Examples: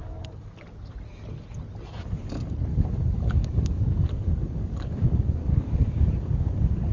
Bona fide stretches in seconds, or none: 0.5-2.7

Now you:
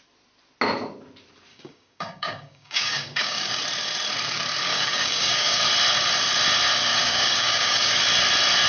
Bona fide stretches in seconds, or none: 0.0-1.5; 3.6-4.7; 5.6-7.0; 8.0-8.7

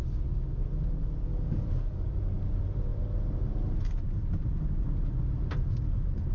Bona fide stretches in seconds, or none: 0.0-1.3; 2.1-6.3

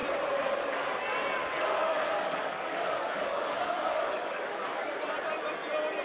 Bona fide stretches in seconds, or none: 0.0-1.4; 5.0-6.0

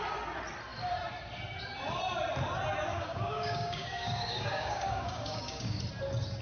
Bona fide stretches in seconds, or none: 0.0-2.9; 5.8-6.4

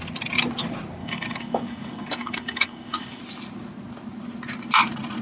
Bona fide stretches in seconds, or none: 0.0-1.0; 3.2-5.2

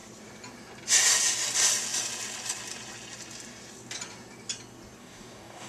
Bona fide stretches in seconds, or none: 0.0-5.0

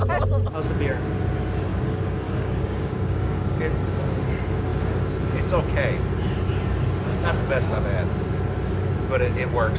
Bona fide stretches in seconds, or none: 0.0-1.7; 3.6-9.8